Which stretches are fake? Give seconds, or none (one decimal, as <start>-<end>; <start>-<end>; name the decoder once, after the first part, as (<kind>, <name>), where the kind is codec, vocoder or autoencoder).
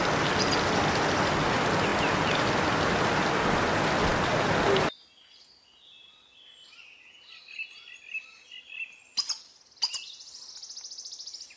none